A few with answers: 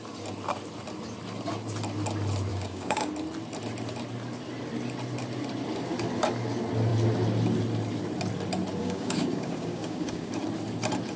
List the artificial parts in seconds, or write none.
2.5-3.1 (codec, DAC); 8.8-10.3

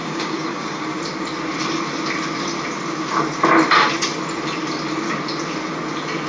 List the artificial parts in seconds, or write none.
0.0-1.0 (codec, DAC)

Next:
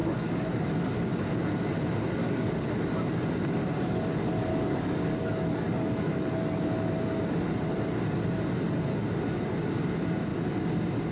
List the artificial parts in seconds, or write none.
0.0-0.6 (codec, DAC); 2.2-2.7; 4.5-6.4